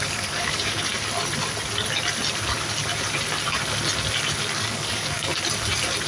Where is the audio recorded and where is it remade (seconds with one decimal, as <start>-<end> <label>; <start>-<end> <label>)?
0.0-0.9 remade; 0.9-4.6 recorded; 4.6-5.3 remade; 5.3-6.1 recorded